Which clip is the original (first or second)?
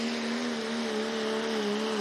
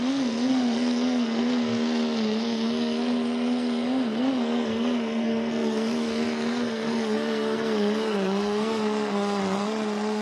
first